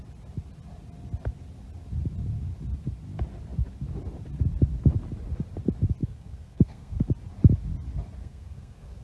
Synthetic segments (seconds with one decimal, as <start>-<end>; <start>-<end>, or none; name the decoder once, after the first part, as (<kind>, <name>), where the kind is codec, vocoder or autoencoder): 6.0-7.0 (codec, SNAC); 8.2-9.0